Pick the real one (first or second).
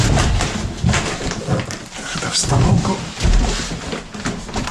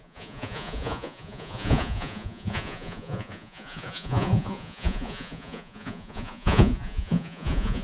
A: first